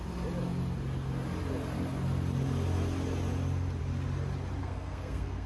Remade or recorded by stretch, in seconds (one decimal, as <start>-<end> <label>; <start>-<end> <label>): 0.0-4.6 recorded; 4.6-5.5 remade